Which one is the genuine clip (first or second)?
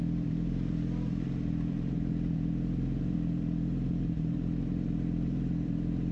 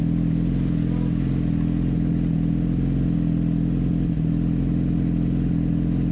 second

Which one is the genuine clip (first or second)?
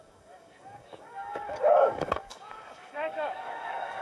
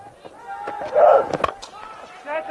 second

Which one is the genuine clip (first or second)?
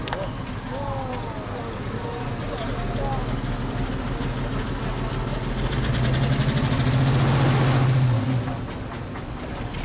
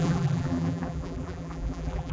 first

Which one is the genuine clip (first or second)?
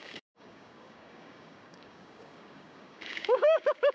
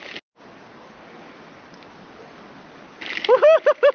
second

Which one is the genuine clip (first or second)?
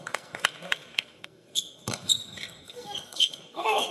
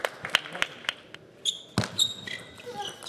second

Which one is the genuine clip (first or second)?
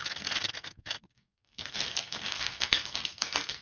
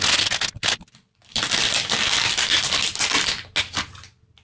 second